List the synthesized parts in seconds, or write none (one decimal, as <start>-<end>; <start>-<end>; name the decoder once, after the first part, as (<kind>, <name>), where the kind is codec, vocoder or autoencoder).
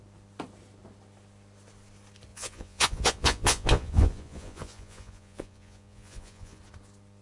2.3-6.6 (vocoder, Vocos)